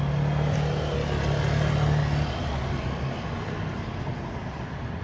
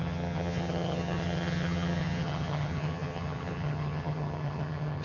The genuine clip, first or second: first